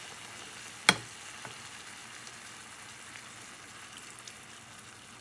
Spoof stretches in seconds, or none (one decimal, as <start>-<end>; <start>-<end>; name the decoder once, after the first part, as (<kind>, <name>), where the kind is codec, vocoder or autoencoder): none